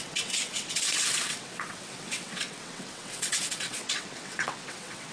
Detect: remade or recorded remade